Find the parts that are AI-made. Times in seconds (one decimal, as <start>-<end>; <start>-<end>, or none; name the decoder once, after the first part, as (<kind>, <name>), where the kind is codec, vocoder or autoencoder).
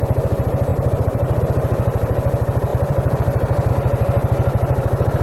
0.7-1.4 (vocoder, BigVGAN v2); 2.7-3.7